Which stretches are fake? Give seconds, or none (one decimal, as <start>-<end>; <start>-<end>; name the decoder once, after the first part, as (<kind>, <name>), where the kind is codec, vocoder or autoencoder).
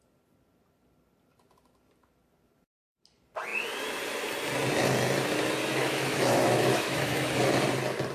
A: 5.8-7.3 (autoencoder, DAC-VAE)